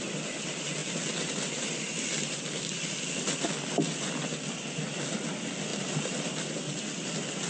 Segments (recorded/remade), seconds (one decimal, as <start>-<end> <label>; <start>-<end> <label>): 0.0-7.5 recorded